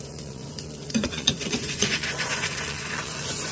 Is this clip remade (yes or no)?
yes